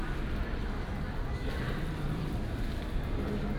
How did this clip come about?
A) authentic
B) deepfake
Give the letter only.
A